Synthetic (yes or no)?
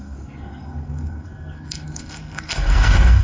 yes